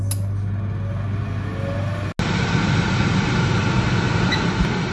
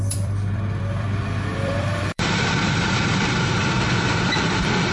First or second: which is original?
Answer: first